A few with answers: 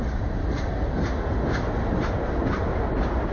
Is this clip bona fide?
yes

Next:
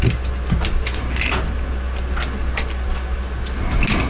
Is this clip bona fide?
yes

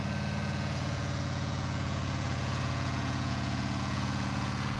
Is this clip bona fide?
no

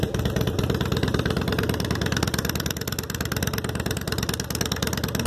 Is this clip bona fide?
yes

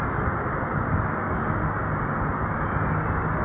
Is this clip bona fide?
yes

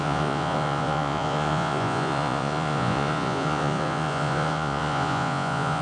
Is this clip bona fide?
no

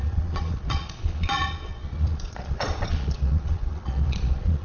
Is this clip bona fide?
no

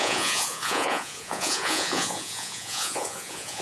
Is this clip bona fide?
no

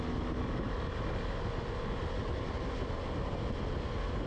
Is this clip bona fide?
yes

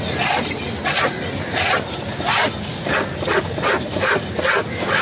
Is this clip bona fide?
yes